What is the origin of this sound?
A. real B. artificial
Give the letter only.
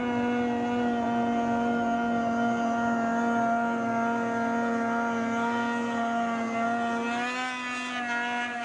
A